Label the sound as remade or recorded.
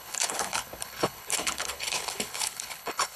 remade